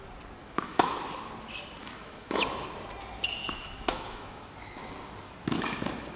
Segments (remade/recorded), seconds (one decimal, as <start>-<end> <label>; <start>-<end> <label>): 0.0-0.4 recorded; 0.4-1.0 remade; 1.0-1.8 recorded; 1.8-2.4 remade; 2.4-3.4 recorded; 3.4-4.4 remade; 4.4-6.2 recorded